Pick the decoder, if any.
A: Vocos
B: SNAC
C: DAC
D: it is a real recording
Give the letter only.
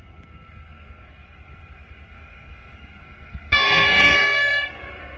B